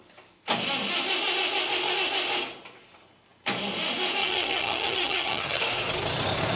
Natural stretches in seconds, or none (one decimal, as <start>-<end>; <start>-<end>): 0.0-4.2; 5.6-6.6